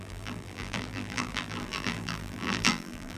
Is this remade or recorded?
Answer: remade